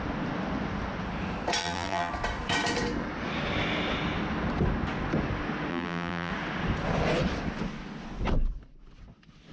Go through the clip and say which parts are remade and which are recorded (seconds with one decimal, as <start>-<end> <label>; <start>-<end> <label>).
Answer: 0.0-1.6 recorded; 1.6-2.1 remade; 2.1-5.7 recorded; 5.7-6.3 remade; 6.3-9.5 recorded

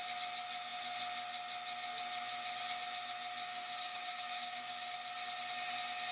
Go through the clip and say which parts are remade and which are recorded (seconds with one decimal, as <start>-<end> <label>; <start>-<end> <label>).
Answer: 0.0-3.5 recorded; 3.5-4.9 remade; 4.9-6.1 recorded

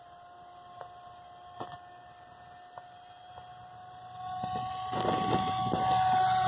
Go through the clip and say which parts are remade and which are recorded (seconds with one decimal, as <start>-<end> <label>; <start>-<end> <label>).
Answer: 0.0-6.5 recorded

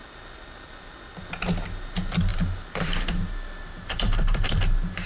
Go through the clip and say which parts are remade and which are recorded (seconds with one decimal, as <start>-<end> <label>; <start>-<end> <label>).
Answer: 0.0-2.3 recorded; 2.3-4.6 remade; 4.6-5.1 recorded

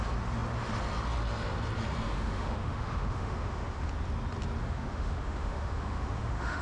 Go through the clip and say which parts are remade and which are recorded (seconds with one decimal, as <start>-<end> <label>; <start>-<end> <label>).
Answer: 0.0-2.1 recorded; 2.1-3.9 remade; 3.9-4.6 recorded; 4.6-6.6 remade

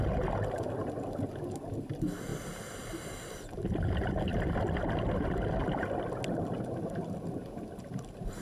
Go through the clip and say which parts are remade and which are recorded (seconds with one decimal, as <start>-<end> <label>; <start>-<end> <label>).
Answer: 0.0-8.4 recorded